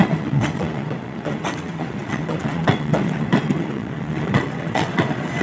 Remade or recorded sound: remade